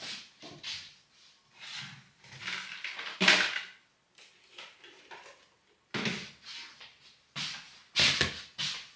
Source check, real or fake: real